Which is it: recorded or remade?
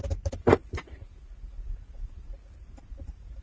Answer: remade